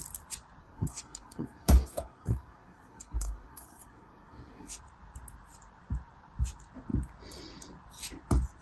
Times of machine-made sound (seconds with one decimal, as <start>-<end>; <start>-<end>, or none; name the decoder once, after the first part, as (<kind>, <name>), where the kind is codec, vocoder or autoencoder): 0.6-4.8 (codec, SNAC)